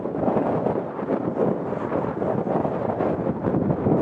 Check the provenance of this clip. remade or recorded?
recorded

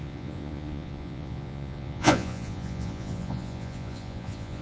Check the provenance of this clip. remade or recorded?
remade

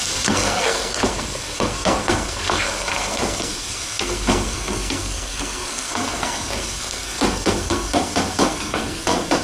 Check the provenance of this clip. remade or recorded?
remade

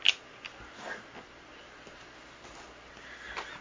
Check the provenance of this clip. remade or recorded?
recorded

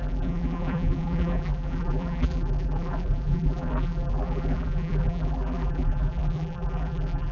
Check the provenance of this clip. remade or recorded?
remade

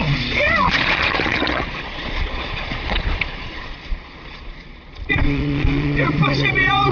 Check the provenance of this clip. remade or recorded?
remade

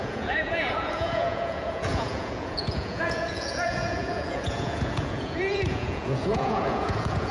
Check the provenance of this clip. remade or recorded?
remade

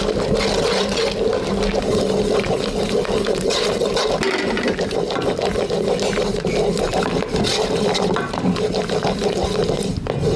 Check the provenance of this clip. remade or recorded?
recorded